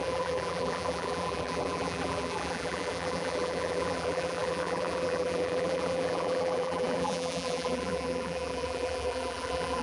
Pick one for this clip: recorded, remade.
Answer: remade